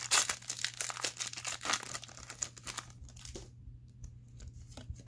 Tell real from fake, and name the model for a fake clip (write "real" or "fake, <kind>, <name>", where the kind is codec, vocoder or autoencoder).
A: real